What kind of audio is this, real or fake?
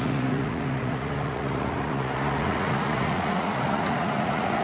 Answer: fake